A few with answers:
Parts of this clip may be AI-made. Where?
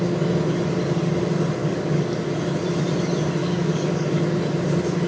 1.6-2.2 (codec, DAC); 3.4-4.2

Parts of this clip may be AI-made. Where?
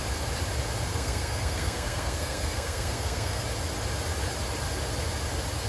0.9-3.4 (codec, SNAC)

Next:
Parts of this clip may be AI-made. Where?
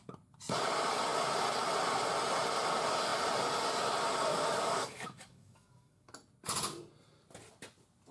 4.3-6.1 (codec, DAC)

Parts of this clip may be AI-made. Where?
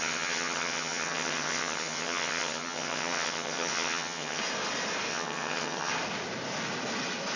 0.0-4.4 (vocoder, HiFi-GAN); 5.1-5.9